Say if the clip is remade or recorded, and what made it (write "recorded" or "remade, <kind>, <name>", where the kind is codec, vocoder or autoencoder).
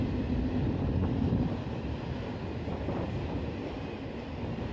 remade, vocoder, BigVGAN v2